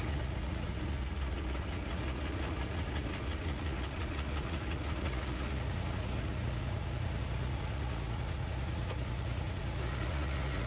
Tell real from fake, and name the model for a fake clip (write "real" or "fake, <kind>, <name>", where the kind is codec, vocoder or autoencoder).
fake, vocoder, Vocos